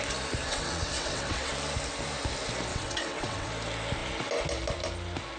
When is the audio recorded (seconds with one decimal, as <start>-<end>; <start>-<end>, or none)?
0.0-0.4; 1.5-2.7; 3.5-5.4